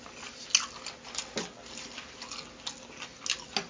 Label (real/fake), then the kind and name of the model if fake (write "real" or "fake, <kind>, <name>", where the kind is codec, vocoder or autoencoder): real